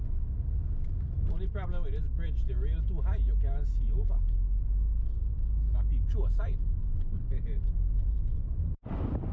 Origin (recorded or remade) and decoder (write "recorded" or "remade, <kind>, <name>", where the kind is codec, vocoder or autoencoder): recorded